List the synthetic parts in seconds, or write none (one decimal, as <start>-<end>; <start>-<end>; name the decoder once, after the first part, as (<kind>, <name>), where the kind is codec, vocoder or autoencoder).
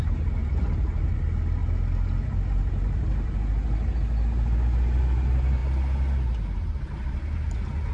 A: none